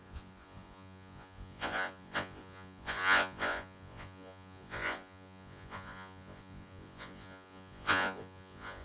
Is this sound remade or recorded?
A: remade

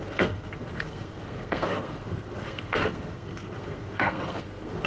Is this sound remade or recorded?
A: remade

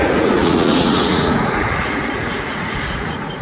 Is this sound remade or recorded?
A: remade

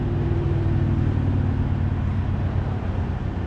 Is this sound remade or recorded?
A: recorded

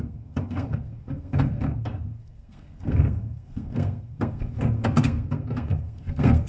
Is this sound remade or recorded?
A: remade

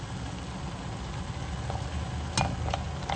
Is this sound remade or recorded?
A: recorded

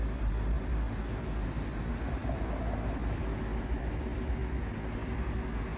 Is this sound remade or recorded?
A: recorded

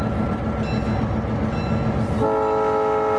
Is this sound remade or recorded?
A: recorded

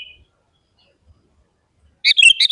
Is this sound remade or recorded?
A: recorded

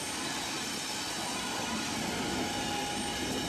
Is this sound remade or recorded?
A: recorded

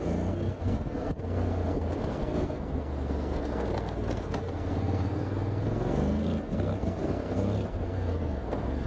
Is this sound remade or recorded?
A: remade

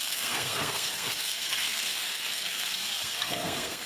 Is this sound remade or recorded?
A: remade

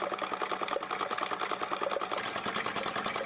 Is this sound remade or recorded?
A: recorded